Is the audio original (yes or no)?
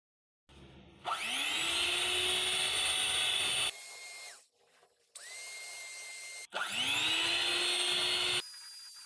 yes